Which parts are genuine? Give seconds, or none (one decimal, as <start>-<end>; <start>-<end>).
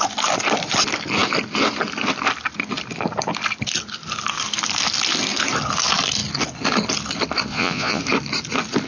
0.0-7.5; 8.0-8.9